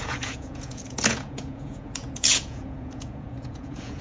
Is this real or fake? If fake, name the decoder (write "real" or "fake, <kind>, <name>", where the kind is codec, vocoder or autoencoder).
fake, vocoder, Vocos